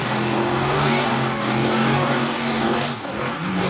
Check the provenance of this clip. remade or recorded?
remade